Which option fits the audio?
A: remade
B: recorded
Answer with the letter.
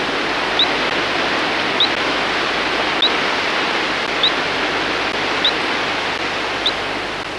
B